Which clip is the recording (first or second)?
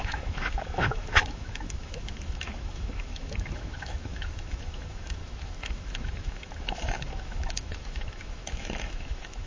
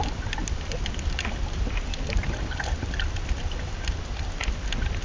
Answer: second